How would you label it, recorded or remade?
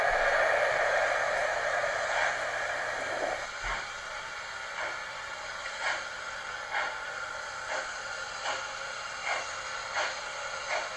recorded